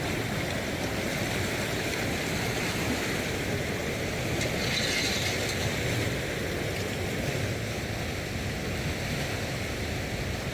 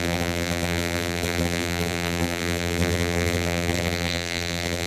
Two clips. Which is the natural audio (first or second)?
first